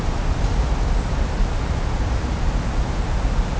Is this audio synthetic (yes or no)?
no